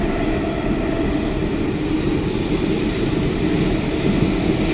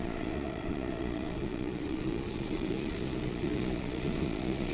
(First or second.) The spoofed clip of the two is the second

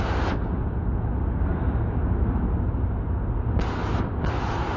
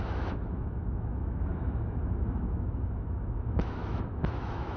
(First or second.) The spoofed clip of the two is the second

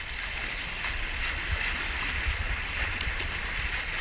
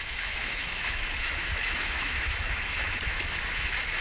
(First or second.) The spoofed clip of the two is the second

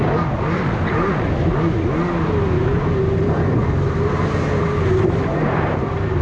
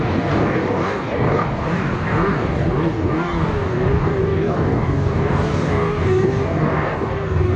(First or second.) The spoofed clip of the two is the second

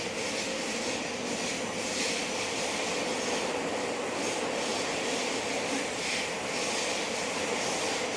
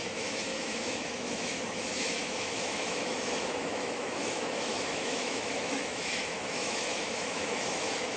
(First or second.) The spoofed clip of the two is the second